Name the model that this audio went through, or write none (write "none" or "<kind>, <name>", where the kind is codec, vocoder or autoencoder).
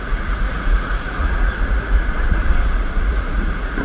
vocoder, Vocos